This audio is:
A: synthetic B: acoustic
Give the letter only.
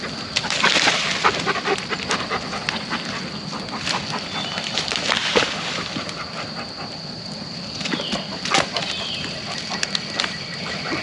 B